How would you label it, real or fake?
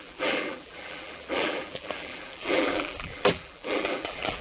fake